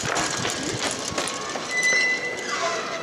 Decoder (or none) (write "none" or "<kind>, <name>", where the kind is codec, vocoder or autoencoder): none